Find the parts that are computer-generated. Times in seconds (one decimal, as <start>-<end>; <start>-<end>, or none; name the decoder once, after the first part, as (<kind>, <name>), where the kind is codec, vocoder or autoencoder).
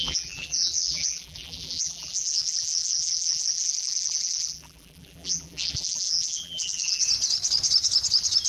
0.0-7.0 (vocoder, BigVGAN v2)